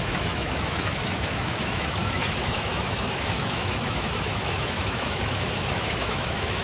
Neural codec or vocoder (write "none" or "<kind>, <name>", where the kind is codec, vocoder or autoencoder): autoencoder, DAC-VAE